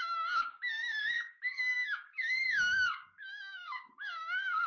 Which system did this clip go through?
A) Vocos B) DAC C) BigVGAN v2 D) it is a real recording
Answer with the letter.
B